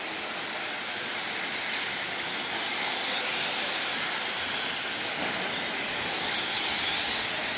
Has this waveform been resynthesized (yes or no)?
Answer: no